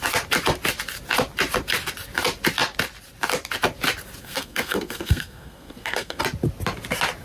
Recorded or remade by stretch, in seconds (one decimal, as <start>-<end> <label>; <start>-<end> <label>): 0.0-4.2 recorded; 4.2-6.2 remade; 6.2-7.2 recorded